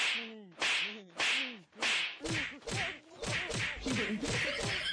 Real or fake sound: real